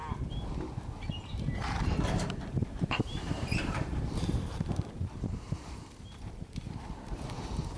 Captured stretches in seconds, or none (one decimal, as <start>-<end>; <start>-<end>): 0.0-1.1